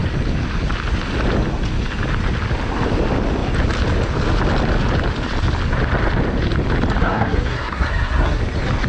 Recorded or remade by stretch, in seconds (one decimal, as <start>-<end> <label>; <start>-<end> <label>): 0.0-7.0 recorded; 7.0-8.4 remade; 8.4-8.9 recorded